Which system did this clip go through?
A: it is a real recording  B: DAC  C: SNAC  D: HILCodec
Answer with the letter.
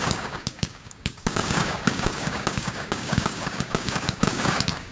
B